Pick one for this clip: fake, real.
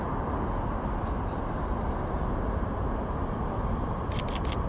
real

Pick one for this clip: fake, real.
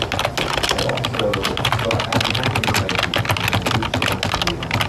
real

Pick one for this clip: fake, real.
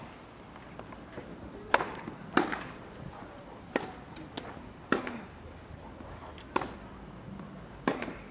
real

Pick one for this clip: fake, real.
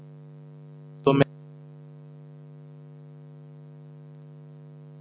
real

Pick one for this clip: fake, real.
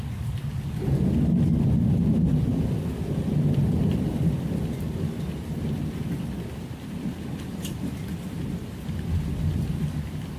real